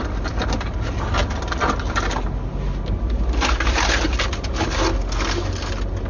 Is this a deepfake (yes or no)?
no